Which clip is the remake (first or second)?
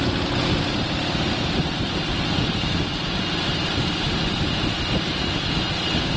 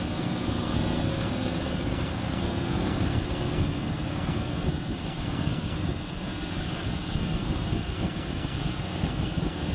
second